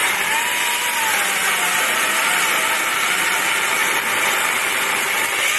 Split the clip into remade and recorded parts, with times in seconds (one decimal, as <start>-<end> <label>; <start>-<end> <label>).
0.0-5.6 recorded